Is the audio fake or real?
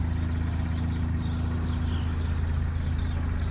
real